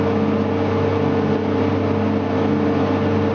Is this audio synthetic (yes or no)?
no